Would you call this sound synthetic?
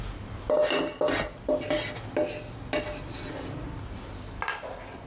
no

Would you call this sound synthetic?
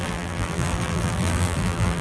yes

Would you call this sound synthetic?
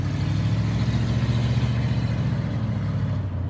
no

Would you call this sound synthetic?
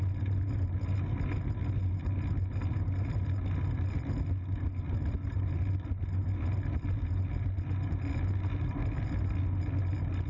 no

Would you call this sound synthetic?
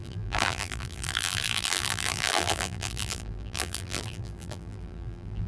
yes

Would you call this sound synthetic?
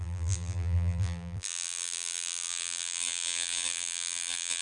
yes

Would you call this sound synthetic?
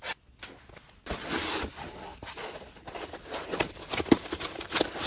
no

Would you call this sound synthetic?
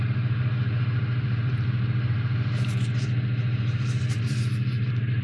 yes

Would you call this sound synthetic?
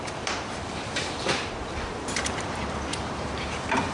yes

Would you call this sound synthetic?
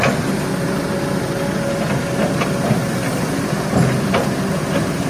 no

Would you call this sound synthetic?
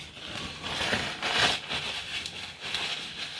no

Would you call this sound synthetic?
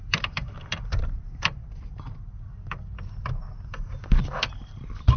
yes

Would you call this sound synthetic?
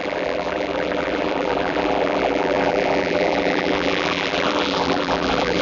yes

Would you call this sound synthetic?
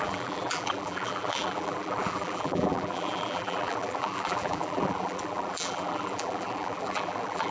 yes